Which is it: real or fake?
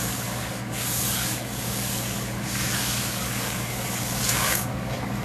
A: fake